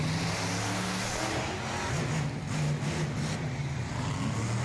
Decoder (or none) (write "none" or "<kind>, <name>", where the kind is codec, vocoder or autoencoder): none